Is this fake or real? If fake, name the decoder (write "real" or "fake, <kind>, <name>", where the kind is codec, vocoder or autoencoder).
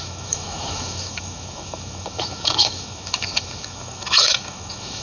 fake, autoencoder, DAC-VAE